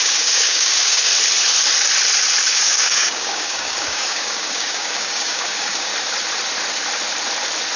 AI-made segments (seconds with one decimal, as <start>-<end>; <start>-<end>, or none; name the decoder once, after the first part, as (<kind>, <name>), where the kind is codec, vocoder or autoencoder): 0.0-1.1 (codec, DAC); 2.5-5.9